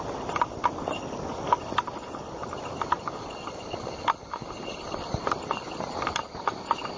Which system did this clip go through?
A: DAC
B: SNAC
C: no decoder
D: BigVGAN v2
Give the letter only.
C